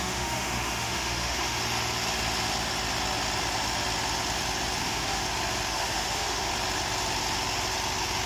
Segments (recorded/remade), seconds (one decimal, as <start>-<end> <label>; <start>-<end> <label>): 0.0-1.6 remade; 1.6-4.8 recorded; 4.8-5.2 remade; 5.2-5.7 recorded; 5.7-6.5 remade; 6.5-8.3 recorded